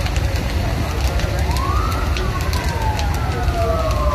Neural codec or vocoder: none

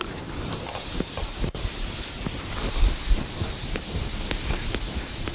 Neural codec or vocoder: vocoder, BigVGAN v2